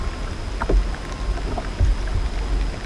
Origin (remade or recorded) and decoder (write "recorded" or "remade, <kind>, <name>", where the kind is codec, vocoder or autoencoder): recorded